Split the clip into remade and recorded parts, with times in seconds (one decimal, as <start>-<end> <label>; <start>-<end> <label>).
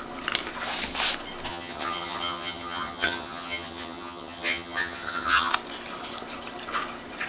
0.0-1.5 recorded; 1.5-5.5 remade; 5.5-7.3 recorded